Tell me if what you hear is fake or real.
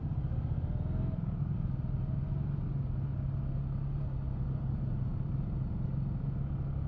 real